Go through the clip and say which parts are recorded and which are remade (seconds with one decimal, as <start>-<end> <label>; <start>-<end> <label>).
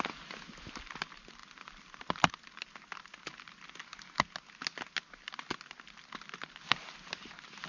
0.0-7.7 recorded